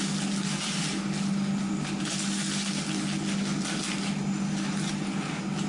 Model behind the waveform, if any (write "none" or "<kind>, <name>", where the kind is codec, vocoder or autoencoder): none